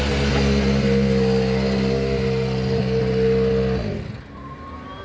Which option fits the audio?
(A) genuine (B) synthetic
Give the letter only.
A